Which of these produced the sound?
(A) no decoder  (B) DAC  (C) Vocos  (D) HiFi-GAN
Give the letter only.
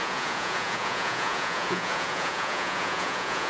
C